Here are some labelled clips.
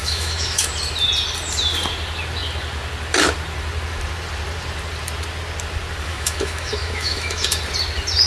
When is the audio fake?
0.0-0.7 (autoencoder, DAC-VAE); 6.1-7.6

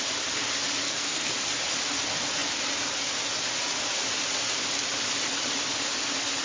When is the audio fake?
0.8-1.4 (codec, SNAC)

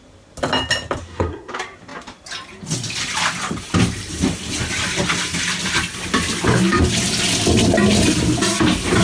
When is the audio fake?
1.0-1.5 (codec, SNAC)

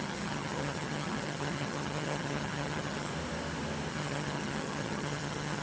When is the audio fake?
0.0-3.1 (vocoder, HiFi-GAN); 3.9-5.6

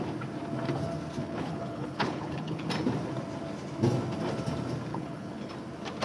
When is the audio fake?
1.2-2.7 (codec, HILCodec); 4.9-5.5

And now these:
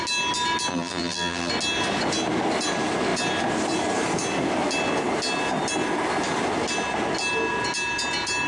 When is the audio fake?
0.7-1.5 (vocoder, BigVGAN v2)

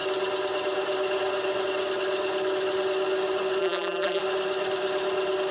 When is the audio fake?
3.6-4.2 (vocoder, BigVGAN v2)